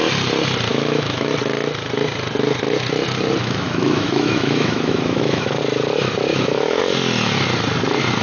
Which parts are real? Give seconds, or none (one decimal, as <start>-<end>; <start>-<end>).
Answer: 0.0-0.7; 1.3-3.4; 5.6-6.3; 6.8-8.2